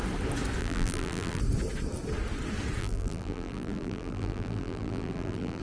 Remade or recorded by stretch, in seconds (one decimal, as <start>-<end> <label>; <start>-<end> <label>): 0.0-0.6 recorded; 0.6-1.4 remade; 1.4-2.8 recorded; 2.8-5.6 remade